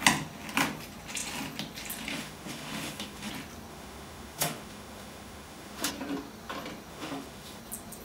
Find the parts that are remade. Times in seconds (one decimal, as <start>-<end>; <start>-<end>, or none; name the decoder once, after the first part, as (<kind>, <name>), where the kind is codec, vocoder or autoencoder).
2.1-3.3 (autoencoder, DAC-VAE); 3.7-5.9; 6.9-7.6